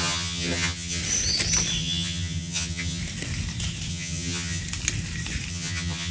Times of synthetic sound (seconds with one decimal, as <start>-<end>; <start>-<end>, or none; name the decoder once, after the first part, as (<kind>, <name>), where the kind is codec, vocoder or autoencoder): 0.0-1.0 (vocoder, HiFi-GAN); 1.8-3.0; 3.9-4.6; 5.5-6.1

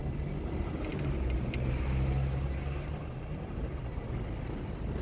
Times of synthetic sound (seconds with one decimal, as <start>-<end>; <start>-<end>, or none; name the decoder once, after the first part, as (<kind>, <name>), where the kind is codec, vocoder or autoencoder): none